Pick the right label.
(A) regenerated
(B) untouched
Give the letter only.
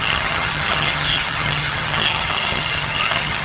A